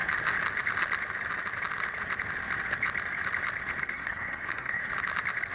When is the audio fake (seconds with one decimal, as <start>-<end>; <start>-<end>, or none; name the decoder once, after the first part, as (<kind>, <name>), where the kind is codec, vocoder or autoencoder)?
3.8-4.9 (codec, SNAC)